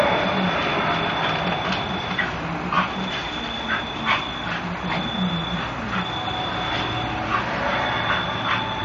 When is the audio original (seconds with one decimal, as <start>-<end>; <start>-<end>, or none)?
0.0-8.8